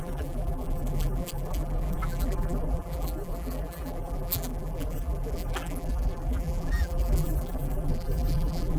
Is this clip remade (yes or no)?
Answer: yes